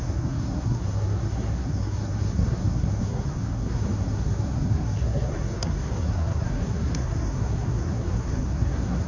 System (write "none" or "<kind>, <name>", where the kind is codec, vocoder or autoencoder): codec, SNAC